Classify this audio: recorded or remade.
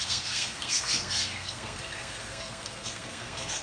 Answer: remade